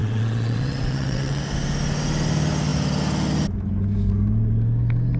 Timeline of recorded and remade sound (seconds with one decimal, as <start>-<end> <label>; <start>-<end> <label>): 0.0-1.4 remade; 1.4-5.2 recorded